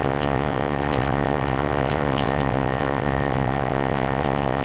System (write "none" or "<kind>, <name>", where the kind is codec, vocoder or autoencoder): vocoder, WaveNeXt